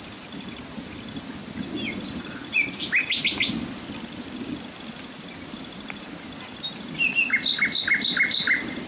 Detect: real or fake real